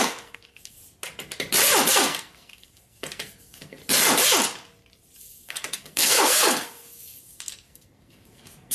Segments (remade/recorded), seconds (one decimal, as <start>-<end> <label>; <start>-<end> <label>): 0.0-0.8 remade; 0.8-1.9 recorded; 1.9-3.8 remade; 3.8-5.2 recorded; 5.2-8.7 remade